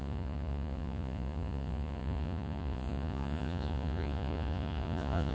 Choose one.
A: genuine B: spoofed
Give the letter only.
B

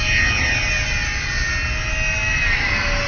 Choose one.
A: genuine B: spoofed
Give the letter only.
A